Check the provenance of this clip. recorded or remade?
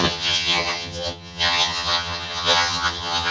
remade